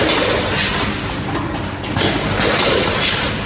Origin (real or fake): real